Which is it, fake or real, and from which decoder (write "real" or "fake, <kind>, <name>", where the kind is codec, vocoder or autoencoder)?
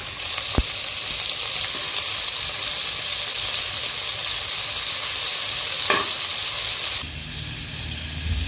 real